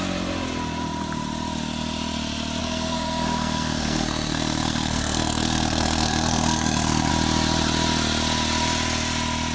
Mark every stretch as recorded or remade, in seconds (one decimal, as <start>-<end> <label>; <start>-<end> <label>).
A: 0.0-2.6 recorded; 2.6-7.1 remade; 7.1-9.5 recorded